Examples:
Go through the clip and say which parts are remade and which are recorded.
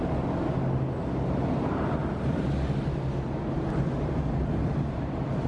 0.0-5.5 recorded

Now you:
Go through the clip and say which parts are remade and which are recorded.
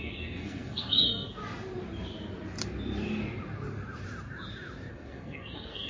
0.0-1.4 remade; 1.4-4.9 recorded; 4.9-5.9 remade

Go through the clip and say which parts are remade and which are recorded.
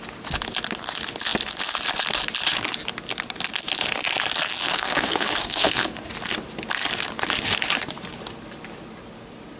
0.0-4.6 recorded; 4.6-6.1 remade; 6.1-9.6 recorded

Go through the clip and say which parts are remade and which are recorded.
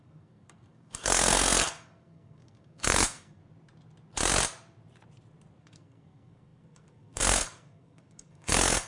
0.0-3.4 remade; 3.4-5.6 recorded; 5.6-8.9 remade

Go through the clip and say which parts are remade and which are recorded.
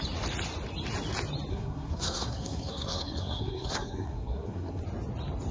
0.0-1.5 recorded; 1.5-4.8 remade; 4.8-5.5 recorded